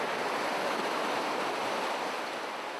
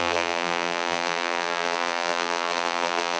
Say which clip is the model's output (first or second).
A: second